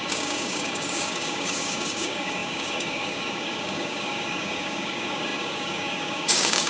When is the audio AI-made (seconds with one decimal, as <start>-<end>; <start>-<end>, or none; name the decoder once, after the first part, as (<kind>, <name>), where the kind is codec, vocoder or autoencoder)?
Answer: 0.0-6.7 (codec, DAC)